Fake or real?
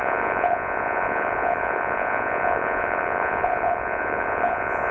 fake